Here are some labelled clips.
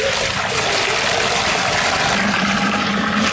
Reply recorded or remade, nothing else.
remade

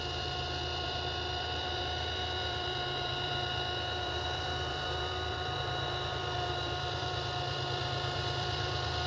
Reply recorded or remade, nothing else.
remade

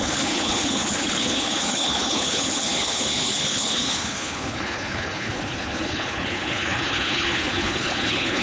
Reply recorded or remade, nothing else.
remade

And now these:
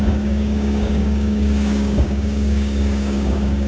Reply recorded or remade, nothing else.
remade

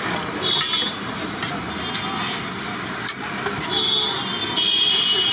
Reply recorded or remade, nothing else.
recorded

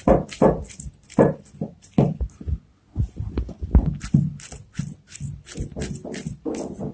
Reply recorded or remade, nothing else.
recorded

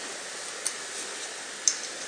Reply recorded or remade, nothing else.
recorded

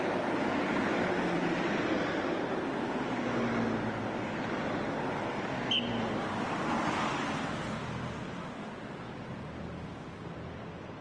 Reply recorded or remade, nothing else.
recorded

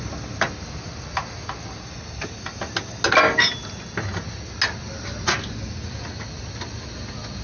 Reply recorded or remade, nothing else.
recorded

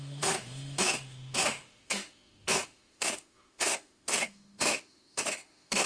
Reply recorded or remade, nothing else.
remade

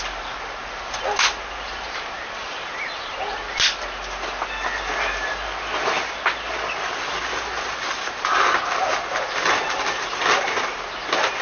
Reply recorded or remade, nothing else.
recorded